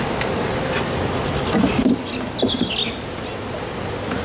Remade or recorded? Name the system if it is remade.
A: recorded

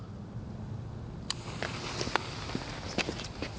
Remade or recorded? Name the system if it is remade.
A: recorded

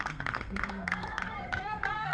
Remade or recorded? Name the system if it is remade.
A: remade, codec, SNAC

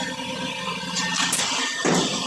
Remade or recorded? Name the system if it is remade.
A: recorded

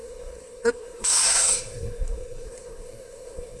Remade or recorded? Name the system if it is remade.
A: remade, codec, SNAC